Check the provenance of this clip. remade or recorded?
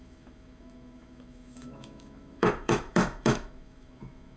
remade